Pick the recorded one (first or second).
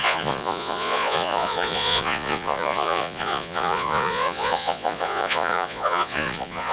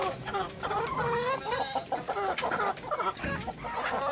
second